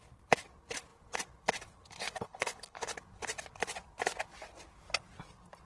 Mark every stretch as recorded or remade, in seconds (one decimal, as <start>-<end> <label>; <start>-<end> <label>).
0.0-2.0 recorded; 2.0-2.9 remade; 2.9-5.7 recorded